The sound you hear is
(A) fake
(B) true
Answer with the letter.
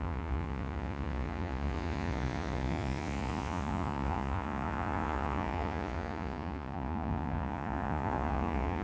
A